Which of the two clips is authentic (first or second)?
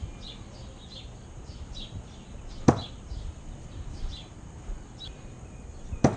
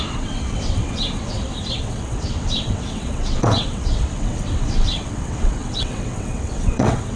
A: first